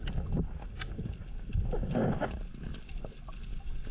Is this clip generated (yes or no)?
no